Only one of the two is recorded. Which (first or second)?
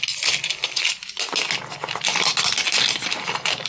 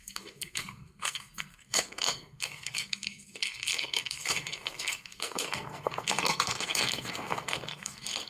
first